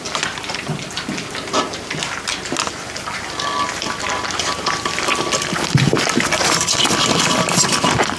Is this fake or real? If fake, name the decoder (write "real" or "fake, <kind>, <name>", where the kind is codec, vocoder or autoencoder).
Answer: real